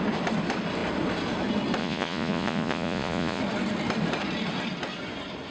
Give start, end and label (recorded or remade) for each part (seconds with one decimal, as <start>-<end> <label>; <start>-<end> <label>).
0.0-1.8 recorded; 1.8-3.4 remade; 3.4-5.5 recorded